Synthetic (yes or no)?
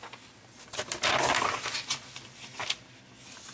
no